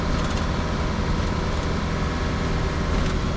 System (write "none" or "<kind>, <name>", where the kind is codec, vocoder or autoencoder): none